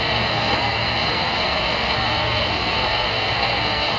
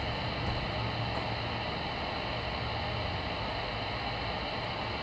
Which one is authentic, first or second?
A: second